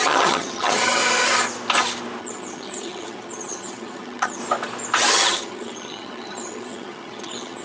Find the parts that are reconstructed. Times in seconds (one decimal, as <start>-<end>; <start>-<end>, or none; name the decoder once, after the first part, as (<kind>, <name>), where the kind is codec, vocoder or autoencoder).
0.0-1.0 (vocoder, HiFi-GAN); 2.2-4.4; 5.1-7.6

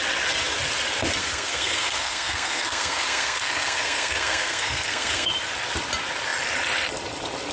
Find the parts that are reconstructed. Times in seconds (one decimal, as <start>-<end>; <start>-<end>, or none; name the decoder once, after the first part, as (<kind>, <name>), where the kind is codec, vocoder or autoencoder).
1.2-5.3 (codec, SNAC)

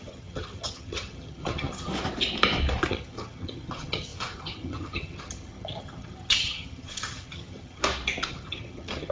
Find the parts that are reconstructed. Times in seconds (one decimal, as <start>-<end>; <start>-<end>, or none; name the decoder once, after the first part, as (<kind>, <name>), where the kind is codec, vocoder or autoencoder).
0.0-1.9 (vocoder, HiFi-GAN); 2.9-7.8; 8.3-9.1

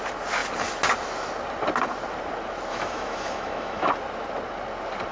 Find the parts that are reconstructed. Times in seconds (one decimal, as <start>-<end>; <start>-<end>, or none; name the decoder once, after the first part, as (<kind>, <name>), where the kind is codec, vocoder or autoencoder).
2.7-3.9 (autoencoder, DAC-VAE)

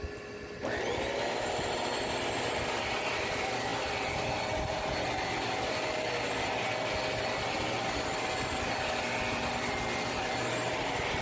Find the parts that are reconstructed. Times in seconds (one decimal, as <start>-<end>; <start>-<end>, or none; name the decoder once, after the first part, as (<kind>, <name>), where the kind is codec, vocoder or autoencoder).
none